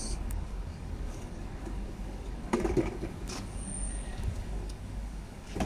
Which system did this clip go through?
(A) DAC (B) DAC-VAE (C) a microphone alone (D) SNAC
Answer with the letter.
A